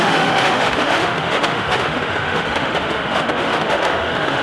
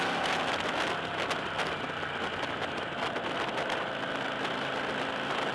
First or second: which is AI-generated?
first